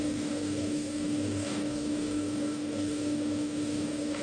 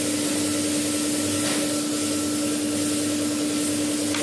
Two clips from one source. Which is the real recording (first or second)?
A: second